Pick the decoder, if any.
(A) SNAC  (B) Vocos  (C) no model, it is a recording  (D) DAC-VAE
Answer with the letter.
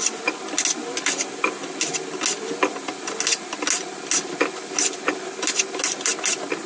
C